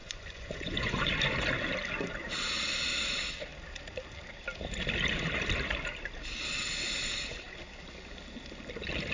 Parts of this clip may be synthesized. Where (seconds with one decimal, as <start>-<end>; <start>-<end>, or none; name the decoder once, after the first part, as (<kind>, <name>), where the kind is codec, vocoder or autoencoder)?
0.0-1.1 (vocoder, Vocos)